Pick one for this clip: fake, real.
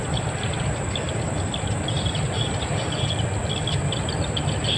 fake